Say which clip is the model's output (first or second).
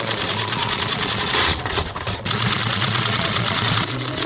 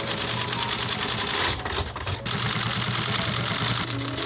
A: first